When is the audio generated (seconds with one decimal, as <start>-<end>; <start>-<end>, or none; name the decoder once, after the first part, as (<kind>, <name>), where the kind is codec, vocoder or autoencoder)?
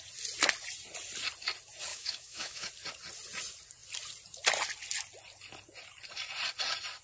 1.9-2.7 (autoencoder, DAC-VAE)